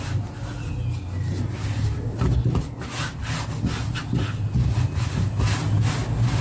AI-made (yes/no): no